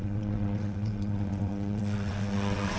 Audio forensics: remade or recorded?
remade